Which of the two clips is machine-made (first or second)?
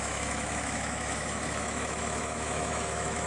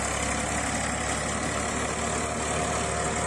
first